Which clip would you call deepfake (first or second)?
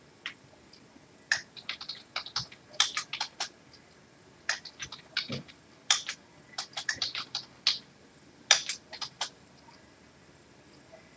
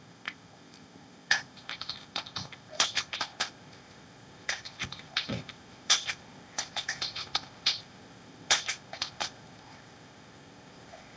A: second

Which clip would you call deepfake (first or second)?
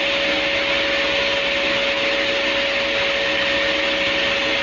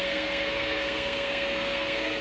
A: second